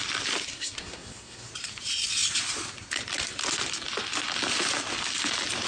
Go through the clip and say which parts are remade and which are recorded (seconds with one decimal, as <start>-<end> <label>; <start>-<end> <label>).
0.0-0.5 recorded; 0.5-1.5 remade; 1.5-5.7 recorded